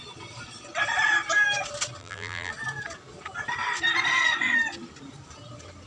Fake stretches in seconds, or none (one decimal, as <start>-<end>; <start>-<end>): 2.0-2.5